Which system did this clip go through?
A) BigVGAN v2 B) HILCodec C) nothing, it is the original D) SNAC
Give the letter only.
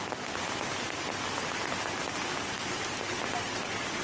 C